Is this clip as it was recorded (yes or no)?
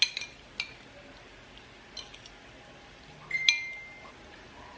yes